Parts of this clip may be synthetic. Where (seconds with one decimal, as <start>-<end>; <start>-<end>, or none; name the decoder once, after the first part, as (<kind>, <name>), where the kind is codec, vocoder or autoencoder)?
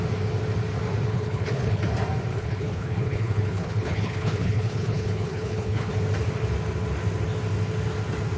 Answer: 1.1-1.8 (codec, HILCodec); 2.3-5.9